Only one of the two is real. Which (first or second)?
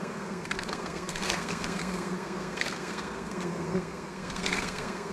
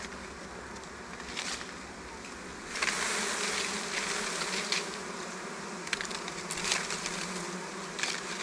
second